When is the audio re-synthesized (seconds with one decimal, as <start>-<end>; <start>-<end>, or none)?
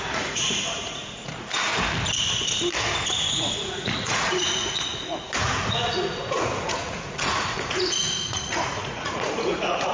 0.0-1.7; 3.3-9.9